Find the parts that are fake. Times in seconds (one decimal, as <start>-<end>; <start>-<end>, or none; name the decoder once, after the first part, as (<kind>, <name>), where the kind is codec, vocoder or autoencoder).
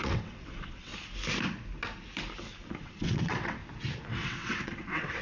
0.0-0.9 (vocoder, WaveNeXt); 2.8-3.6; 4.1-5.2